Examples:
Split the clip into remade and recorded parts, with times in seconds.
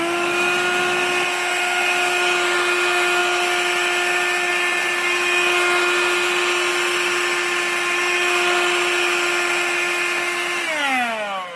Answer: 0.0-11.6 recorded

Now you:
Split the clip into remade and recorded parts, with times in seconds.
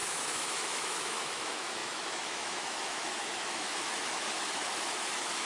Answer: 0.0-5.5 remade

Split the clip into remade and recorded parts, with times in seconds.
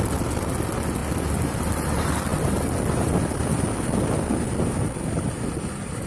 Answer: 0.0-6.1 recorded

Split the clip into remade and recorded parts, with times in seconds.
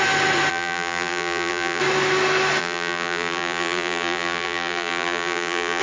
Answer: 0.0-0.5 recorded; 0.5-1.8 remade; 1.8-2.6 recorded; 2.6-5.8 remade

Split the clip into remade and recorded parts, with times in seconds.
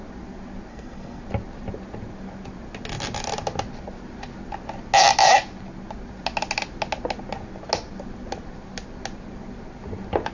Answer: 0.0-0.7 recorded; 0.7-1.2 remade; 1.2-10.3 recorded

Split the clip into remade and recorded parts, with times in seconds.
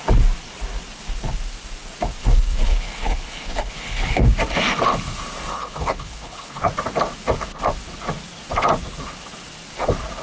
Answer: 0.0-2.2 recorded; 2.2-4.3 remade; 4.3-5.5 recorded; 5.5-6.7 remade; 6.7-10.2 recorded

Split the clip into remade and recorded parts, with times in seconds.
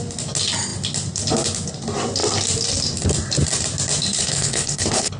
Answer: 0.0-4.1 recorded; 4.1-5.2 remade